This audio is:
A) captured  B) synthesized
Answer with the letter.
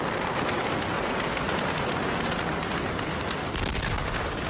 A